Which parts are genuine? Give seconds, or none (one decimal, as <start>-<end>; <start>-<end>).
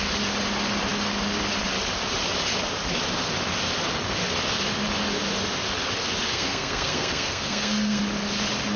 0.0-6.3; 8.0-8.8